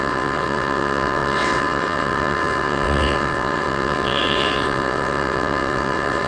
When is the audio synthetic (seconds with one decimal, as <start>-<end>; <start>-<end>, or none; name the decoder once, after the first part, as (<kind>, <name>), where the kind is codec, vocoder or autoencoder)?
0.0-6.3 (vocoder, WaveNeXt)